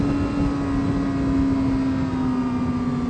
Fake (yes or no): no